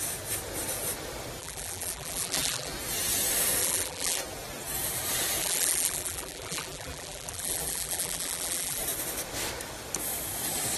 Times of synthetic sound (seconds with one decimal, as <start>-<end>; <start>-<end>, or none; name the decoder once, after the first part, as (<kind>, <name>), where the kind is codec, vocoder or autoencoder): 1.4-2.7 (vocoder, BigVGAN v2); 3.6-4.2; 5.4-8.8